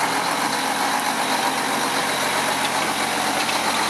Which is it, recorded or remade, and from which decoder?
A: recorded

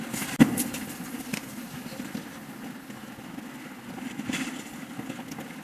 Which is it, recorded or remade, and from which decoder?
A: recorded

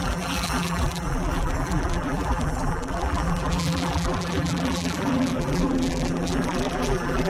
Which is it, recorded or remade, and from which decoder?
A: remade, vocoder, BigVGAN v2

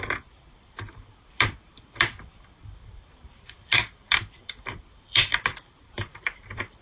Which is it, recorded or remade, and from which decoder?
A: remade, vocoder, BigVGAN v2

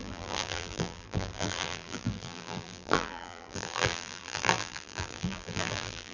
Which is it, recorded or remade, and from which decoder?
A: remade, vocoder, BigVGAN v2